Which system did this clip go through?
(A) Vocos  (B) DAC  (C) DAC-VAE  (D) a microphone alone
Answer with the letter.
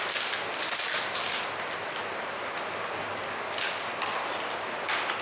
D